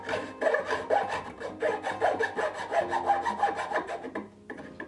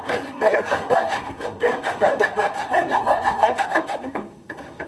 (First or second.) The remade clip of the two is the second